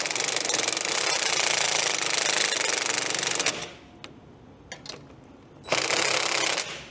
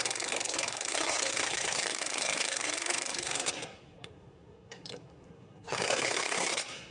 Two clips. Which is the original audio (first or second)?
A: first